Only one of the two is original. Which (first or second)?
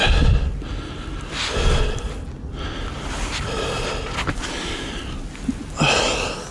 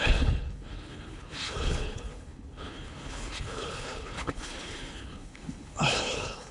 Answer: first